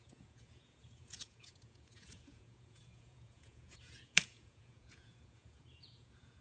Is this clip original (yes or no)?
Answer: no